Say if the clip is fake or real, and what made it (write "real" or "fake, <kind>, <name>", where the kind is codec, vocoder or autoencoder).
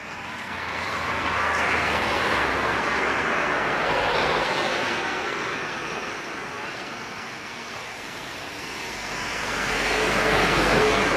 fake, codec, SNAC